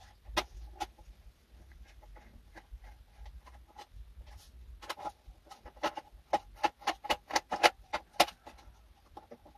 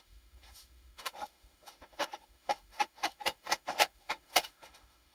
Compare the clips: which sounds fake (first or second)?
second